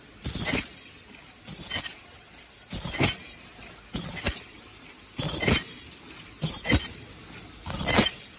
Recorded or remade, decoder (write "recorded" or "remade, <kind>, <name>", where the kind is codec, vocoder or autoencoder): recorded